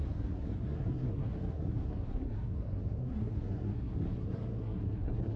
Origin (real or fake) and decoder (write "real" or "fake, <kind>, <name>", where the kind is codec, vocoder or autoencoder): fake, codec, SNAC